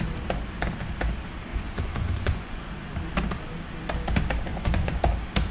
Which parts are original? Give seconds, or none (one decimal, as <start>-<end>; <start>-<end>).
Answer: 0.0-1.5; 2.7-4.5; 5.0-5.5